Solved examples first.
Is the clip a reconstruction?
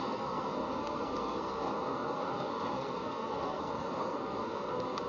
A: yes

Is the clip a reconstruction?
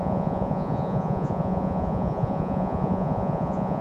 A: yes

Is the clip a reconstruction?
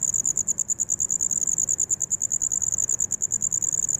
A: no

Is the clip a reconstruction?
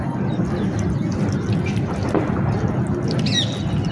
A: no